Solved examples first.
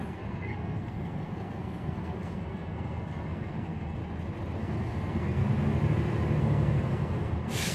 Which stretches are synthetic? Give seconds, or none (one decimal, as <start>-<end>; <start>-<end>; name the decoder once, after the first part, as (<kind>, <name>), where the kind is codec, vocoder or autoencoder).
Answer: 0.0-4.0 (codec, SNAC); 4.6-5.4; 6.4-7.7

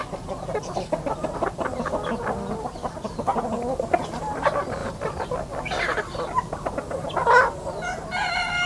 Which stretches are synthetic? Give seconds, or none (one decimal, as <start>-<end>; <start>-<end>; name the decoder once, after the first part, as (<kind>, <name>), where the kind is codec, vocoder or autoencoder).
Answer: none

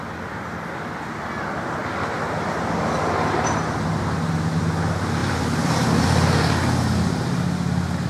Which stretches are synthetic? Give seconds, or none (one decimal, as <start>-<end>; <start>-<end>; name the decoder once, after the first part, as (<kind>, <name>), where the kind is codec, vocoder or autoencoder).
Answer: 5.2-6.1 (vocoder, BigVGAN v2)

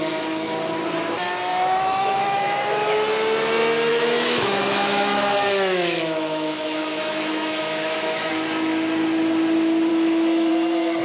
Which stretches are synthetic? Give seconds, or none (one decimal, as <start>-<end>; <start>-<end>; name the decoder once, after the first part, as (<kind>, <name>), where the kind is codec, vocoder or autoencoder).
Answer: 1.5-2.6 (autoencoder, DAC-VAE); 3.9-8.3; 9.9-10.5

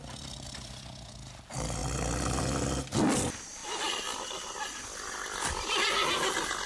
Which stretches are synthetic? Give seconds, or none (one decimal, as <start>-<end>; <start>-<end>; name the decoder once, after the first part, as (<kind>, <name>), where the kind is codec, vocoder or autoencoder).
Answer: none

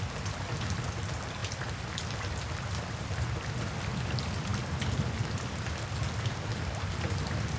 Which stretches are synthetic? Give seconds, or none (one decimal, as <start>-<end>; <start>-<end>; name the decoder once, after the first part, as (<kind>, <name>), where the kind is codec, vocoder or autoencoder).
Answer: 0.0-4.5 (vocoder, BigVGAN v2); 5.7-6.5

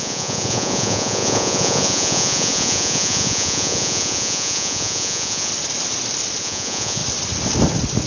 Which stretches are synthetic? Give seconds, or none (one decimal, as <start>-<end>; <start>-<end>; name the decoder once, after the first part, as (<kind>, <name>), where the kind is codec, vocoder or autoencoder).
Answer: 0.0-5.5 (vocoder, Vocos); 6.4-7.0

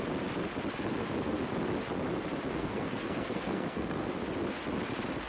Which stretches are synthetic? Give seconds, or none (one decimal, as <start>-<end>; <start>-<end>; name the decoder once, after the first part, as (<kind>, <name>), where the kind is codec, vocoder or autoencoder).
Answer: 2.5-4.1 (codec, SNAC)